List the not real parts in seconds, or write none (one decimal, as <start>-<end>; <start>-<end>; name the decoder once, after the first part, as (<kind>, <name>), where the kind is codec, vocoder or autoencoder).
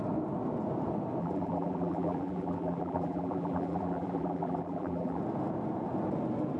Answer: 1.2-5.2 (vocoder, BigVGAN v2)